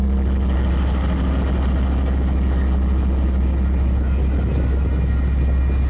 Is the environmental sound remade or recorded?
recorded